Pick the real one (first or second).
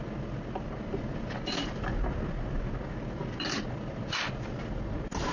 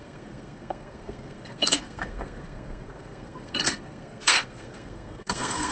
first